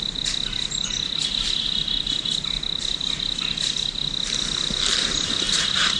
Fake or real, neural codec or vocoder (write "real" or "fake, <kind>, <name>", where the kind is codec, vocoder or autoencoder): real